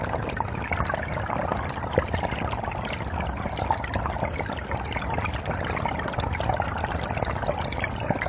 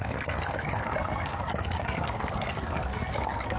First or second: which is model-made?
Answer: second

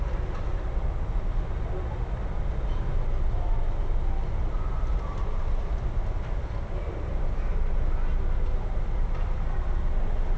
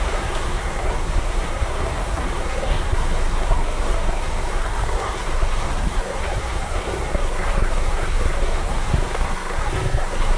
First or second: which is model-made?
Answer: second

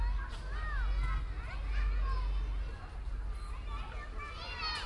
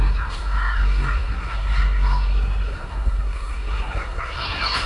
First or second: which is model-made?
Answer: second